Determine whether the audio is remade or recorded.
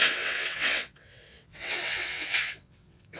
remade